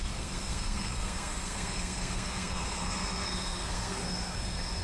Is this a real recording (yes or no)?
no